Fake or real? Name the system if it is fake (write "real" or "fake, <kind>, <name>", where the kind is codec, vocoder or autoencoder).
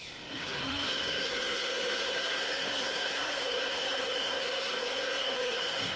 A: fake, codec, SNAC